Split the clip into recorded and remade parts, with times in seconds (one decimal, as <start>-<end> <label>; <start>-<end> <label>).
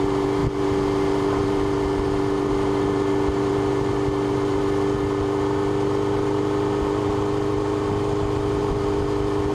0.0-9.5 recorded